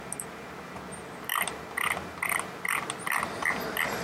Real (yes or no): yes